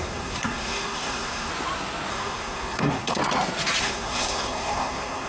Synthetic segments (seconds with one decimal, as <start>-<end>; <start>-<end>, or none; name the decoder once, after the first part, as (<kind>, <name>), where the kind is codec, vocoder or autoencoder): 0.0-1.5 (codec, SNAC); 2.1-3.2; 3.8-5.3